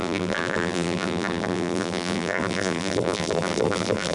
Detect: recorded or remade remade